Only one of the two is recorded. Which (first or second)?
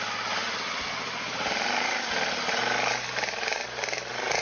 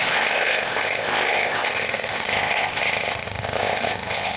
first